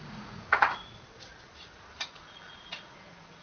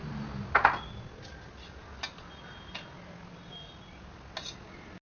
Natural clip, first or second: second